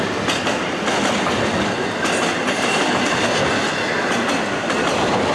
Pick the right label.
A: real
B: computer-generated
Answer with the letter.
A